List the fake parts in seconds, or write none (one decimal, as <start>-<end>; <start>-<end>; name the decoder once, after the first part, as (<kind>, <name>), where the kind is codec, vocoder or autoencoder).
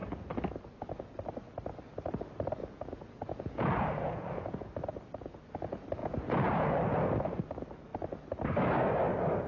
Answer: 2.6-4.7 (vocoder, Vocos); 6.0-6.8